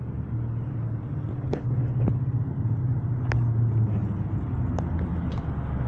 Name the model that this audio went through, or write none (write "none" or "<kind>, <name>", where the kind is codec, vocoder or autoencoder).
none